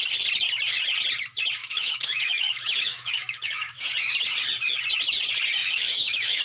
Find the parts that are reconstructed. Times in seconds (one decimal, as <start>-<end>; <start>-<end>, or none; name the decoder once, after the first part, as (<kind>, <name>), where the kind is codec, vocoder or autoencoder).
1.6-3.9 (autoencoder, DAC-VAE); 5.6-6.4